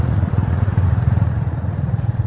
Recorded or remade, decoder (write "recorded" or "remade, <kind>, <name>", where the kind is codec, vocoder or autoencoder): remade, vocoder, Vocos